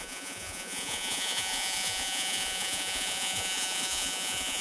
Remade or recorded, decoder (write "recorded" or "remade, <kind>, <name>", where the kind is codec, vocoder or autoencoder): remade, vocoder, Vocos